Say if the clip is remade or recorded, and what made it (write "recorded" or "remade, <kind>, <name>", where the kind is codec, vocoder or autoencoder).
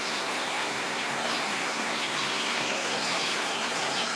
remade, codec, SNAC